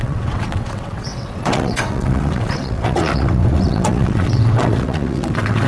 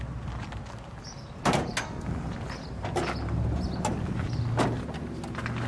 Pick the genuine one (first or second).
second